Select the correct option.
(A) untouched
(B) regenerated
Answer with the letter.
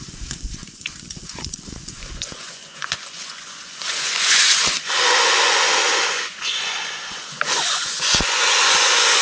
B